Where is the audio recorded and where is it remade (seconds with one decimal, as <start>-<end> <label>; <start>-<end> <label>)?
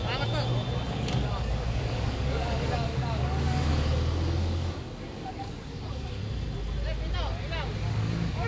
0.0-0.9 recorded; 0.9-3.7 remade; 3.7-4.4 recorded; 4.4-6.2 remade; 6.2-7.9 recorded; 7.9-8.5 remade